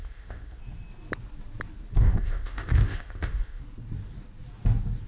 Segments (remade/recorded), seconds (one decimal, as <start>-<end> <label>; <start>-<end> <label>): 0.0-0.6 remade; 0.6-2.0 recorded; 2.0-3.6 remade; 3.6-5.1 recorded